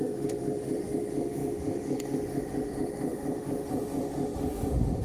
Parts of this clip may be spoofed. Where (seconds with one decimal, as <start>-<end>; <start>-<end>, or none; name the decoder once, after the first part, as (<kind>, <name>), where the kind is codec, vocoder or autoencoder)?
0.0-5.0 (autoencoder, DAC-VAE)